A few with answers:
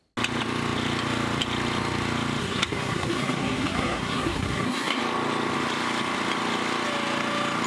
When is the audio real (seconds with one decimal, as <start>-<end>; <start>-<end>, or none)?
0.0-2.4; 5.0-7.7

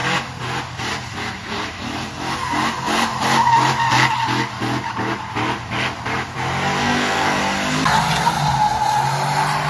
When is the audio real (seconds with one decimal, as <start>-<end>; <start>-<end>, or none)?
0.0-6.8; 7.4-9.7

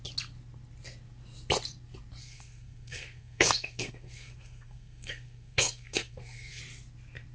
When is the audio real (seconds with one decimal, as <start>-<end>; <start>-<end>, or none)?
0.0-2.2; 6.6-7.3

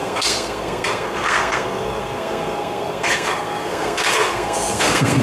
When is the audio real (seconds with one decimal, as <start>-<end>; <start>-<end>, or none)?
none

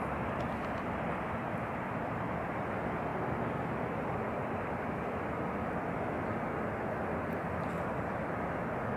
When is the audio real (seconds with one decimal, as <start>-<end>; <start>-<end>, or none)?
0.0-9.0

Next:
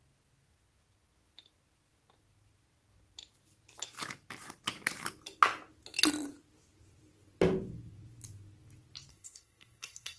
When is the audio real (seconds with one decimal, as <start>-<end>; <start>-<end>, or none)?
0.0-9.1

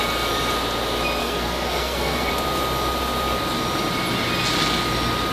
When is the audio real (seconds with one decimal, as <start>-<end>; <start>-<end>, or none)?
0.0-1.2; 2.3-5.3